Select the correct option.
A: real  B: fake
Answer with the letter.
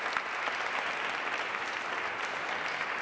A